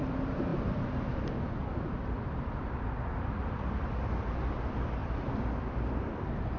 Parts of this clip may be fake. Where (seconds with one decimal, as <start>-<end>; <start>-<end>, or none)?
0.0-6.6